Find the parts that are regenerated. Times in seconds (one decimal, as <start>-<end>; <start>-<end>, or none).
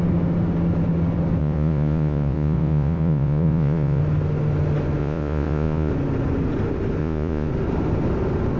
1.4-4.0; 5.0-5.9; 7.0-7.5